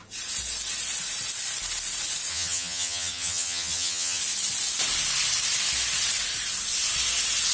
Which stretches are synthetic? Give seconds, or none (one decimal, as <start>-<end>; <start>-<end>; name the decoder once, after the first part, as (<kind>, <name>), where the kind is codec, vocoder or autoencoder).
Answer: 2.3-4.2 (vocoder, HiFi-GAN)